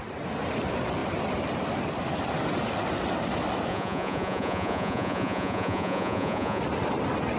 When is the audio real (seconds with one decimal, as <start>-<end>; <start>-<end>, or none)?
0.0-3.7; 6.6-7.4